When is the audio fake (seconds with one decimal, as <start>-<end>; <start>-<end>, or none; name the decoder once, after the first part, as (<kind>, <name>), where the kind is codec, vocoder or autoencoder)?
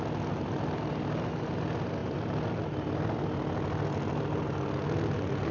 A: none